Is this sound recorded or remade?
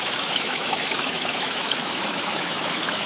remade